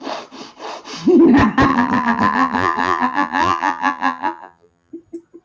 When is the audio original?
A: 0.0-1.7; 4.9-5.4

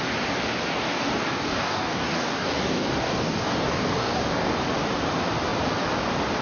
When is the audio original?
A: 0.0-0.7; 4.5-6.4

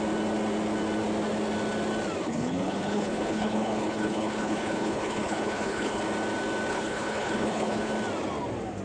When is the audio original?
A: 0.0-2.2; 6.0-6.7; 7.9-8.8